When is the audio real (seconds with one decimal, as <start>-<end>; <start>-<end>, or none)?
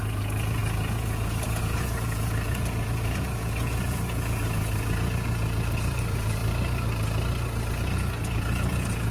6.4-7.7